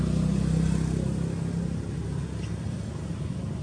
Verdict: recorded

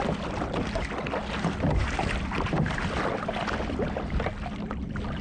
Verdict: recorded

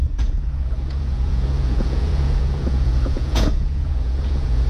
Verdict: remade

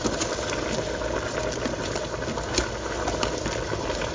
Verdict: recorded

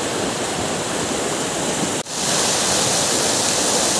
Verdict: recorded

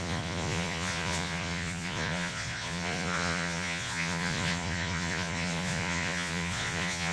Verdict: remade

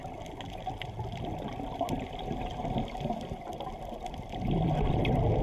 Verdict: recorded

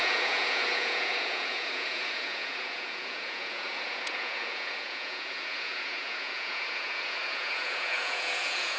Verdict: remade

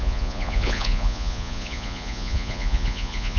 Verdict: remade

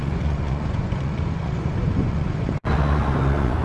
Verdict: remade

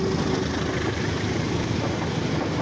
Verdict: recorded